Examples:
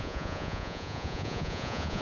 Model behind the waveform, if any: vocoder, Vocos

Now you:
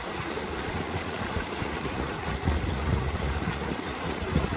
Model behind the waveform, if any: vocoder, Vocos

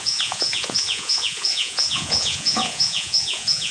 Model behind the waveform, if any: vocoder, Vocos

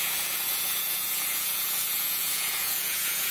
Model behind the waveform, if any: vocoder, Vocos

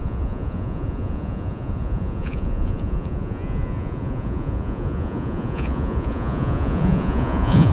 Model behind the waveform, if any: vocoder, Vocos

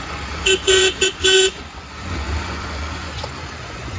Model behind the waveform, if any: vocoder, Vocos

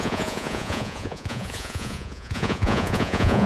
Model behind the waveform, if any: vocoder, Vocos